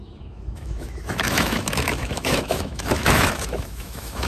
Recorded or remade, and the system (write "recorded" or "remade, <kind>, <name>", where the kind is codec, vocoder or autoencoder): remade, autoencoder, DAC-VAE